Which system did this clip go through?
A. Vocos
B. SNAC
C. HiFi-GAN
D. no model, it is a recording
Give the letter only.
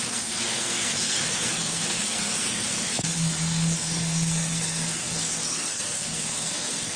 B